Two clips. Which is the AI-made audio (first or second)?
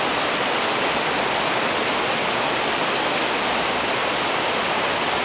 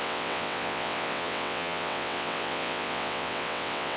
second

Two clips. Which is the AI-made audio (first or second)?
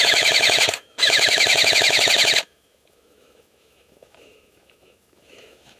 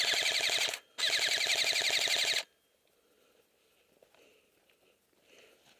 first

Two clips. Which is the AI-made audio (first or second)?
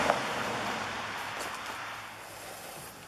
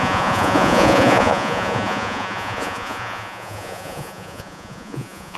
second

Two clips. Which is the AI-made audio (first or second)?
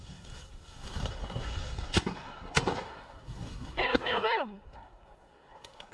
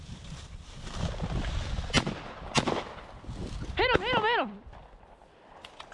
first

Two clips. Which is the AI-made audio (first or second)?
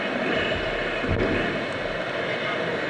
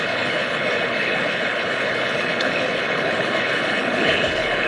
second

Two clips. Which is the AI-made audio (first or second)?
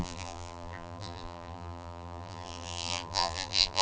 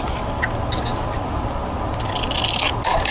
first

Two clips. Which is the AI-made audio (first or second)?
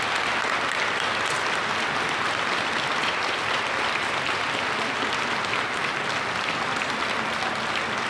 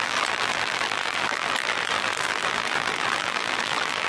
second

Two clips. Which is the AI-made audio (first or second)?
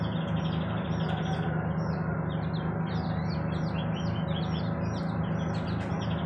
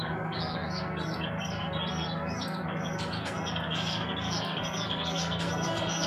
second